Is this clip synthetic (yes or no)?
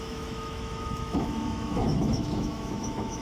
yes